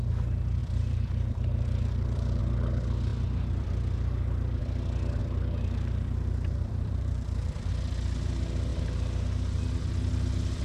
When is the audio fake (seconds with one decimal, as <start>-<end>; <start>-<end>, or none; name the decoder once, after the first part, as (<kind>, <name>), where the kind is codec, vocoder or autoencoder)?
0.6-2.4 (vocoder, BigVGAN v2); 5.2-7.7; 8.7-9.6